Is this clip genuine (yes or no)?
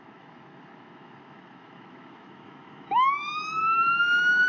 no